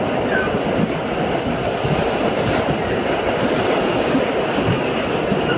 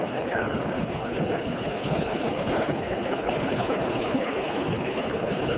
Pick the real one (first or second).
first